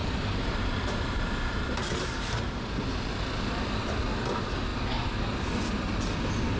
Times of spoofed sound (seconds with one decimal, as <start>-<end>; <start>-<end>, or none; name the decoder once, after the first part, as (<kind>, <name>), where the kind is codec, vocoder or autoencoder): 0.0-4.0 (vocoder, BigVGAN v2)